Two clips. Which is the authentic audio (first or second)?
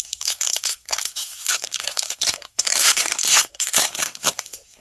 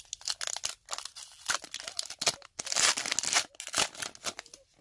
second